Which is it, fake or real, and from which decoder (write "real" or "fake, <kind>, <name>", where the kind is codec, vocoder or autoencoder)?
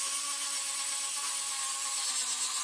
real